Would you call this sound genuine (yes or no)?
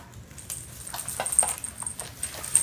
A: yes